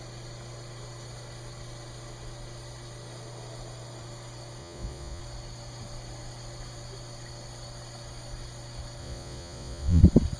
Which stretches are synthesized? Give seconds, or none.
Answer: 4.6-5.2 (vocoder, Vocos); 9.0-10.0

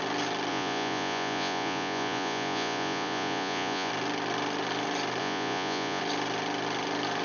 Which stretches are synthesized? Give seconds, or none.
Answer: 0.5-3.9 (vocoder, Vocos); 5.2-6.0

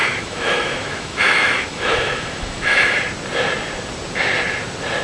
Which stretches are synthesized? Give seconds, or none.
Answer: 0.0-3.0 (autoencoder, DAC-VAE)

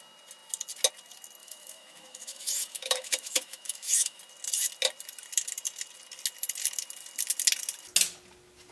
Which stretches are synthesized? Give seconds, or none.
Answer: 1.4-4.2 (autoencoder, DAC-VAE)